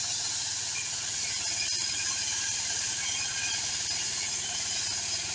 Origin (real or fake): fake